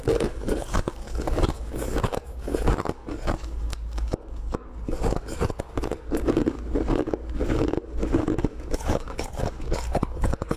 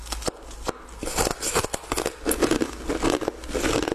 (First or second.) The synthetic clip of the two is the first